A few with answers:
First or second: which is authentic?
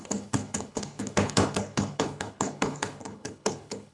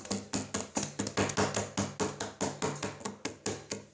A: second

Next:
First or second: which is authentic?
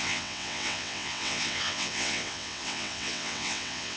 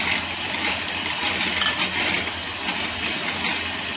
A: second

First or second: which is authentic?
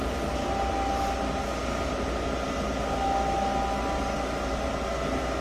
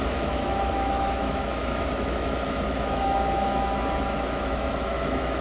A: first